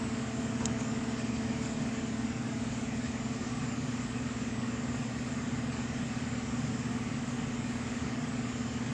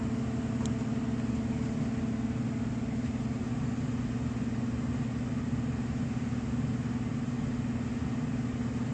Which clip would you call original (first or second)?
second